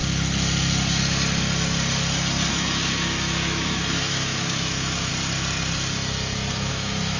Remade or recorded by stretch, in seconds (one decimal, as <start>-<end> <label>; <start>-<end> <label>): 0.0-2.5 recorded; 2.5-5.1 remade; 5.1-6.7 recorded; 6.7-7.2 remade